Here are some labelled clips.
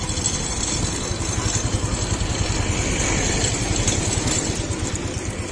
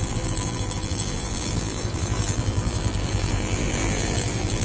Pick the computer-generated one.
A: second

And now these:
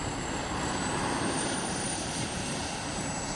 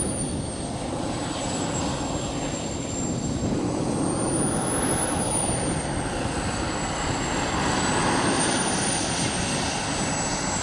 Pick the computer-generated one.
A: first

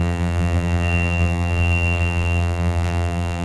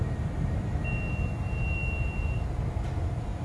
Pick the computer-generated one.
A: first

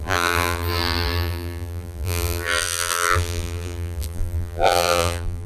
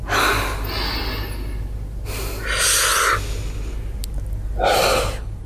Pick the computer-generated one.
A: first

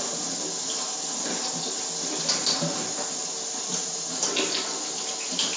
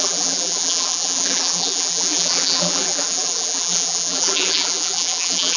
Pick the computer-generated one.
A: second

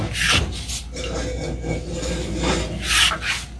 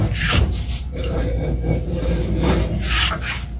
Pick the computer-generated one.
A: second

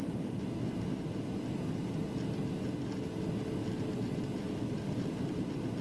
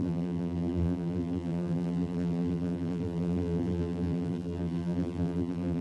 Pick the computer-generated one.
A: second